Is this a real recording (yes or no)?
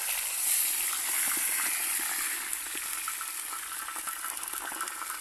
yes